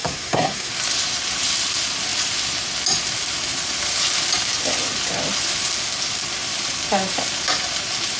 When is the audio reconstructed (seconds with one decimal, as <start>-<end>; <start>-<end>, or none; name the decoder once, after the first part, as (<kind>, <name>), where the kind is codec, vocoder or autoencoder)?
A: 0.0-0.7 (codec, SNAC)